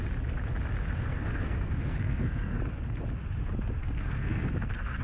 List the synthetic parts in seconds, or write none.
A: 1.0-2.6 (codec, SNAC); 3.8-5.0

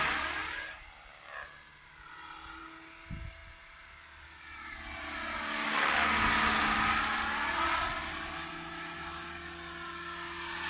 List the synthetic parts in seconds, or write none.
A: 0.4-2.6 (vocoder, BigVGAN v2)

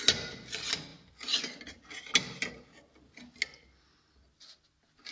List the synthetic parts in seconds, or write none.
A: none

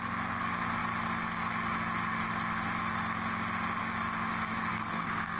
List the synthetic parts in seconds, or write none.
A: 4.7-5.4 (codec, SNAC)

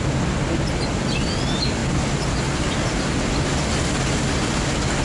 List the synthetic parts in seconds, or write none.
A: none